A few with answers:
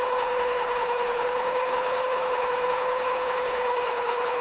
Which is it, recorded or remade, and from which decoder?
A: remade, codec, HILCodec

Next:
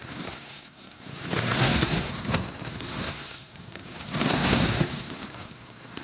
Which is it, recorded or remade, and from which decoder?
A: remade, codec, SNAC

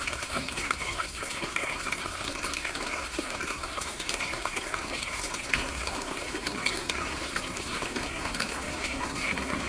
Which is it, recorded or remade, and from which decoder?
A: remade, codec, SNAC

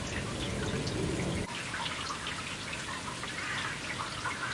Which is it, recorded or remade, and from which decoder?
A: recorded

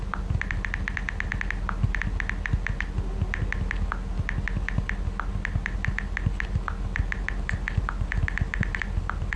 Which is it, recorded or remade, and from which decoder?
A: recorded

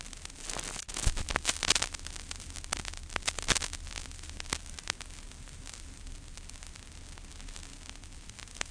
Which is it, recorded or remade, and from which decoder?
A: recorded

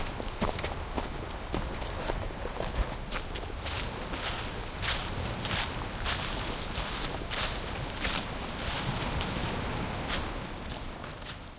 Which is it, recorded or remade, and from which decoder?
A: recorded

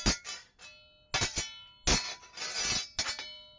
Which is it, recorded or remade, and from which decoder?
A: recorded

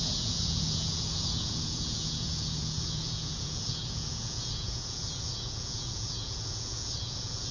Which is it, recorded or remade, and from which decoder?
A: remade, vocoder, Vocos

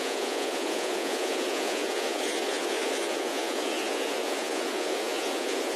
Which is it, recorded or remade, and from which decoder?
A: remade, vocoder, Vocos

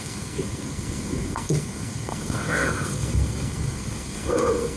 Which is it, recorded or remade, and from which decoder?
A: remade, codec, SNAC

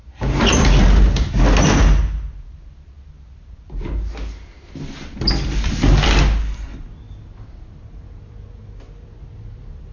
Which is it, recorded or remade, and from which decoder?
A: recorded